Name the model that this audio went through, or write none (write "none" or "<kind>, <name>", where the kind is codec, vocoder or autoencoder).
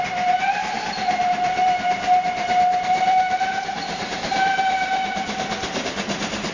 vocoder, BigVGAN v2